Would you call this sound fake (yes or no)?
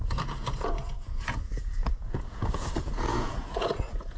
yes